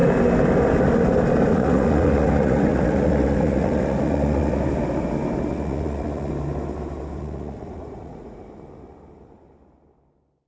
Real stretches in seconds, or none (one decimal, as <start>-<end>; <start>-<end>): 0.0-1.5; 4.6-5.5; 6.3-7.2; 8.4-10.5